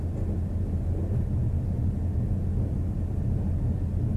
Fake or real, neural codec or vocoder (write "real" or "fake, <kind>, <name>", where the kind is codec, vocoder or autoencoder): real